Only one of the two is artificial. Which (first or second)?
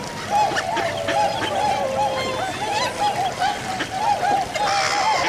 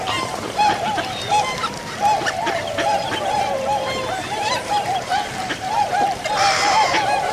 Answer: second